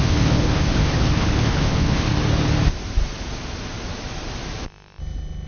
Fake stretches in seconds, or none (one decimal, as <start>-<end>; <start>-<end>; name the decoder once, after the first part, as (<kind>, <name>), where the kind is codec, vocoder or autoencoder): 0.0-2.1 (codec, HILCodec); 5.0-5.5